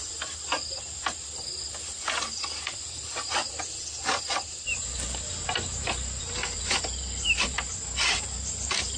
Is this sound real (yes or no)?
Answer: yes